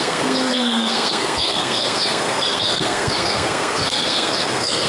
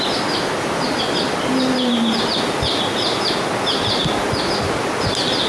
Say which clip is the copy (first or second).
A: first